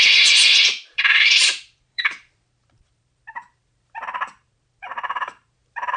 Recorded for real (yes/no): no